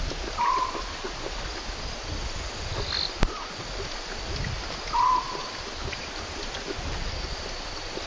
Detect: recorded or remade recorded